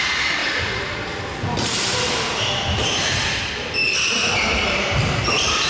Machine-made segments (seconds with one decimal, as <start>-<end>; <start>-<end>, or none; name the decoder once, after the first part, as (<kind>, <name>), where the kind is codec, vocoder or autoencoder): none